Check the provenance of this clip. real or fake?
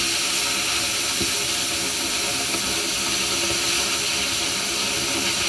real